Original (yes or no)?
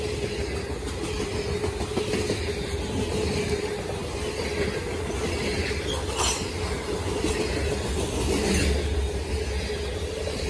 yes